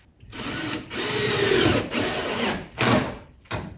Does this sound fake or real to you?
fake